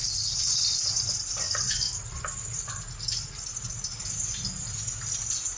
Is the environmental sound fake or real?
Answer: real